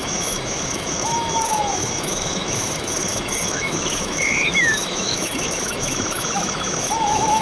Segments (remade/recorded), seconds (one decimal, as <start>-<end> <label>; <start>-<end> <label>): 0.0-7.4 remade